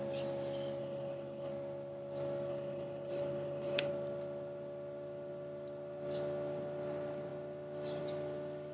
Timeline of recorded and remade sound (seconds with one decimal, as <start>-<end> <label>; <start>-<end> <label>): 0.0-0.8 recorded; 0.8-1.5 remade; 1.5-2.5 recorded; 2.5-3.9 remade; 3.9-8.7 recorded